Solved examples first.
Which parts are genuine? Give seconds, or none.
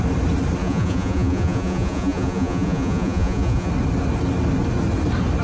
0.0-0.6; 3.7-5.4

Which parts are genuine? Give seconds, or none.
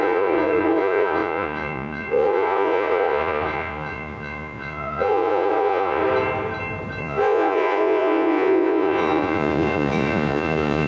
6.0-7.0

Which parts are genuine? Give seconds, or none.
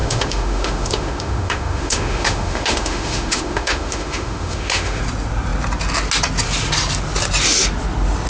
5.0-8.3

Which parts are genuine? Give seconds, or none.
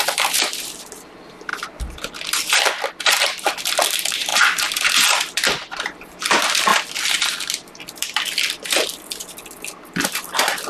4.3-4.9